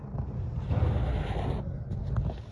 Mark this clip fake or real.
real